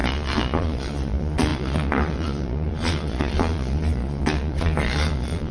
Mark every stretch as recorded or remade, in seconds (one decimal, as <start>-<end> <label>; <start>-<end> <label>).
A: 0.0-5.5 remade